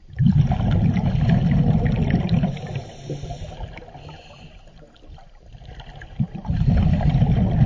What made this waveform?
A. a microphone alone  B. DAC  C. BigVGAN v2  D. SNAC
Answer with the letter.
A